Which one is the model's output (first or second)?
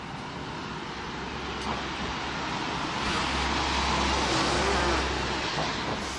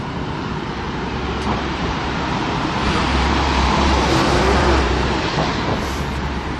second